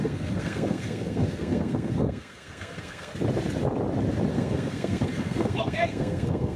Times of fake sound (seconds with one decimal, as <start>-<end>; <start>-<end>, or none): 0.0-3.1; 4.3-6.6